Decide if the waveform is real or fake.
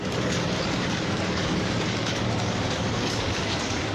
fake